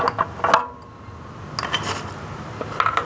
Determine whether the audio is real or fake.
real